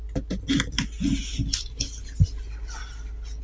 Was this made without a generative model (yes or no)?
yes